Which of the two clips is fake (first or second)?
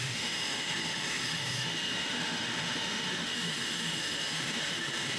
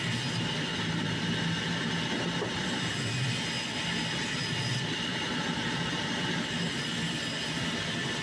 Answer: first